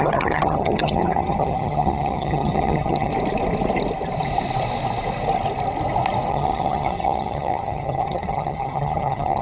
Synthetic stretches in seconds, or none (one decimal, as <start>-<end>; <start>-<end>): 0.0-3.1; 6.3-9.4